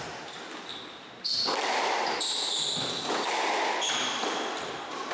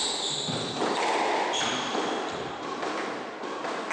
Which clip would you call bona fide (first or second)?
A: first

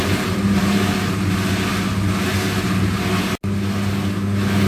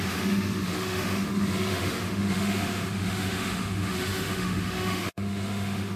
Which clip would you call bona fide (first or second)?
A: first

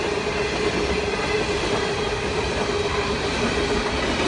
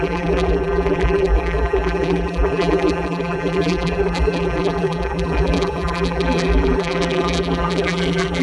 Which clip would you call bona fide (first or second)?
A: first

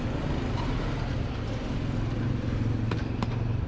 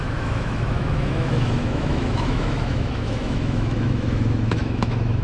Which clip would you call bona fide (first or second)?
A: first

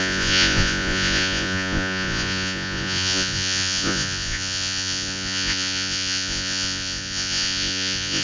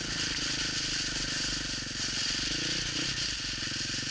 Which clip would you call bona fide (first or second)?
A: second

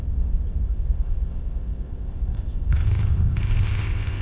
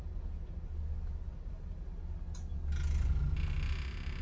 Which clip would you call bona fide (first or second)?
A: second